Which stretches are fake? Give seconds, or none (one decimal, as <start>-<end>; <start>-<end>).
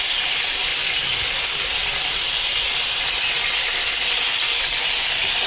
none